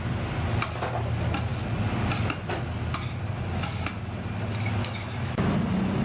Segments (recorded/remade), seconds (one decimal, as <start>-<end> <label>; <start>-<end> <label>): 0.0-4.8 recorded; 4.8-5.5 remade; 5.5-6.0 recorded